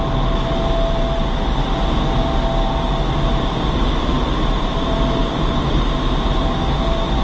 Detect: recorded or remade recorded